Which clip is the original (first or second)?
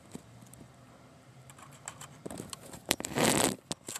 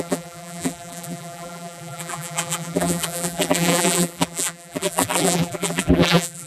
first